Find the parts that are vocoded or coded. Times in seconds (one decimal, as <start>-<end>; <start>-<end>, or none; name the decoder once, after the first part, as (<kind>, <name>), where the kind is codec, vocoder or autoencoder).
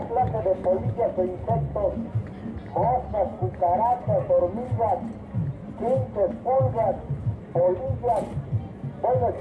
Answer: none